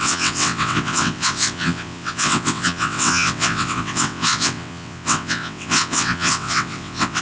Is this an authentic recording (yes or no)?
no